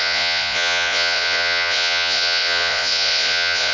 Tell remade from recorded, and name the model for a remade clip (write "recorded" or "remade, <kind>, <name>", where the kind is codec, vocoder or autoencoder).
remade, vocoder, Vocos